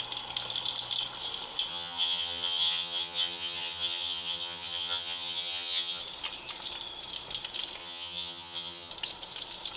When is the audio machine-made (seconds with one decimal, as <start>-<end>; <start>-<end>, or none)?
1.7-6.0; 7.8-8.9